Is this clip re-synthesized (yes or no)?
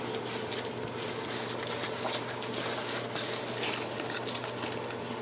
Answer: no